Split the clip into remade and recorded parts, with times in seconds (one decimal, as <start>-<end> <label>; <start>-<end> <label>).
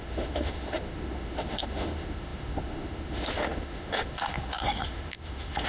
0.0-5.7 remade